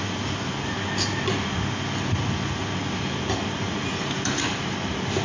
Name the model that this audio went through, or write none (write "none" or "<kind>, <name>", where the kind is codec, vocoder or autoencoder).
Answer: none